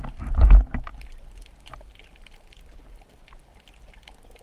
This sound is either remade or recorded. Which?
recorded